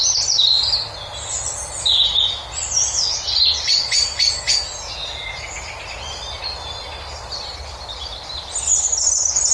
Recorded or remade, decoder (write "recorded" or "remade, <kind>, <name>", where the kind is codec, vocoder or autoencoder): recorded